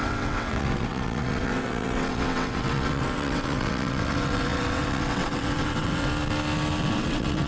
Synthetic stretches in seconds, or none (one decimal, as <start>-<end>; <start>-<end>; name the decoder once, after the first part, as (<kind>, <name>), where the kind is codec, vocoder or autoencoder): 0.0-6.1 (vocoder, WaveNeXt); 6.9-7.5